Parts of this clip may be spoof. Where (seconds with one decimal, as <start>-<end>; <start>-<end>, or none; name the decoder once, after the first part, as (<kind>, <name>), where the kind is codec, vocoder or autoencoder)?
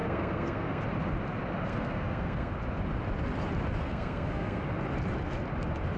0.0-0.8 (codec, SNAC); 1.7-2.5; 3.8-4.6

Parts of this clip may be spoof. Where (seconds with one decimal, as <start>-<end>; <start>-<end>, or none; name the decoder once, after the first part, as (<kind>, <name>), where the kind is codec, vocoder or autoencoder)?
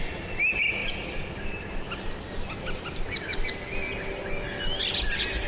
none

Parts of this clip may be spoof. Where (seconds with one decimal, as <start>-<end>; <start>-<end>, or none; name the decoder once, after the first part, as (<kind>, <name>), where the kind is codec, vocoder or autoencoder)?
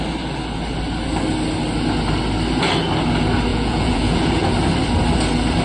3.5-4.5 (vocoder, Vocos)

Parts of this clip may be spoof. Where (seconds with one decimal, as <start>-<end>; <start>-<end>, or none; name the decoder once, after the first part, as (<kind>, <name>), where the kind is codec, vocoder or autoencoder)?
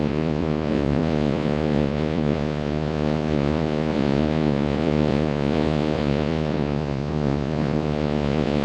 0.0-8.6 (vocoder, Vocos)